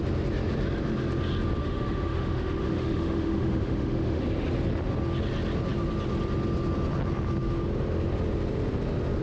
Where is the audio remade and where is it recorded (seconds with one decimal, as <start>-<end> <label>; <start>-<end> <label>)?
0.0-1.6 recorded; 1.6-4.2 remade; 4.2-9.2 recorded